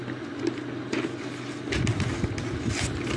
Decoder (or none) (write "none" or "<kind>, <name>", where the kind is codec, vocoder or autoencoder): none